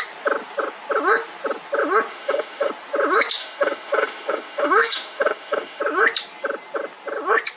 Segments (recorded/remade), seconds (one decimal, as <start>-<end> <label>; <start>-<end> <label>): 0.0-2.1 recorded; 2.1-2.7 remade; 2.7-3.4 recorded; 3.4-5.8 remade; 5.8-7.6 recorded

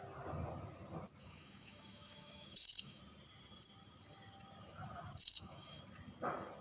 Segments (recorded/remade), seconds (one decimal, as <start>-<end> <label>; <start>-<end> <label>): 0.0-1.2 recorded; 1.2-3.0 remade; 3.0-5.2 recorded; 5.2-5.8 remade; 5.8-6.6 recorded